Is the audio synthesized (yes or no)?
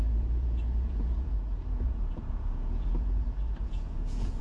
yes